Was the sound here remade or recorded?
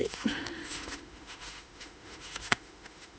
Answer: remade